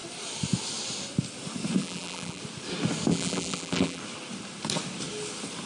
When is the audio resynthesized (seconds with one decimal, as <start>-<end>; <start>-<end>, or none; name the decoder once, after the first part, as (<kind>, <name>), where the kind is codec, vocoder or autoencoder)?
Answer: 1.8-2.4 (vocoder, BigVGAN v2); 3.1-4.0